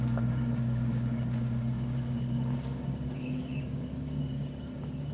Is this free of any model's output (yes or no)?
no